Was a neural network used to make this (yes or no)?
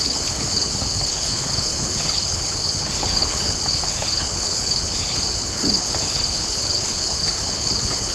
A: yes